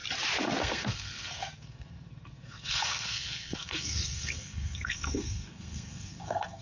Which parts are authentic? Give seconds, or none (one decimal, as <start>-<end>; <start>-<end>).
0.0-0.6